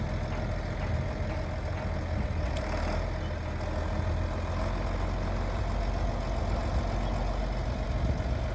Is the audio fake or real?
real